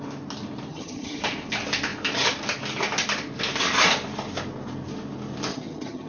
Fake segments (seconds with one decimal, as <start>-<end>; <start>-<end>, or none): 0.7-1.2; 5.5-6.1